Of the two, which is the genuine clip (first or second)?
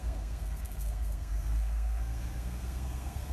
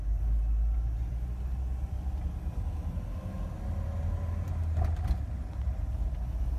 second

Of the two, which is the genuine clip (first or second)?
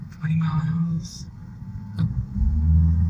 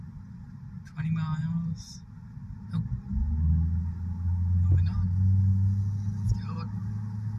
second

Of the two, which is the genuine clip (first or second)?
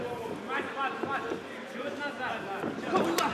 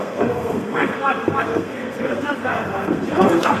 first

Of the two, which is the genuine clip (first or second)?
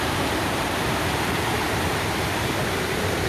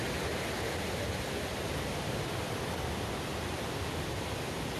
second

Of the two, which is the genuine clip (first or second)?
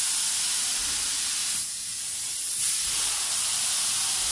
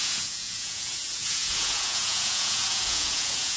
first